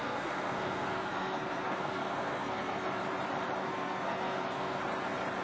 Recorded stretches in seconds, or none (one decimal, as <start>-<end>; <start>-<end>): 3.0-3.6; 4.8-5.4